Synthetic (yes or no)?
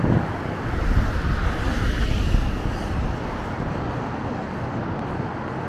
no